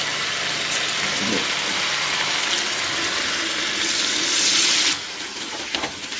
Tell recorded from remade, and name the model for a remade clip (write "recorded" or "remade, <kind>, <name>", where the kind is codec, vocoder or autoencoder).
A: recorded